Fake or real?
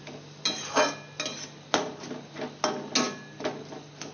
real